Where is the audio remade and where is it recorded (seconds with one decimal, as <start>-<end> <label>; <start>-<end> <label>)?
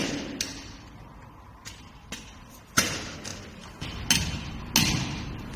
0.0-5.6 recorded